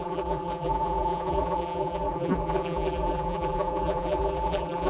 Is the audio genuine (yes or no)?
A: no